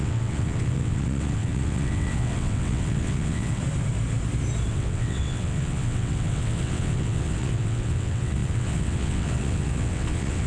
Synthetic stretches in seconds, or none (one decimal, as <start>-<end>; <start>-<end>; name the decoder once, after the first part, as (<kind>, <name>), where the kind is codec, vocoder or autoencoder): 0.0-3.6 (vocoder, WaveNeXt); 4.7-10.5